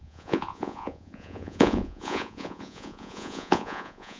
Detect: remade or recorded remade